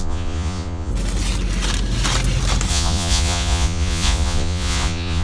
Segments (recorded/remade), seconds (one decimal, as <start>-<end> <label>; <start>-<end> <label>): 0.0-0.9 remade; 0.9-2.7 recorded; 2.7-5.2 remade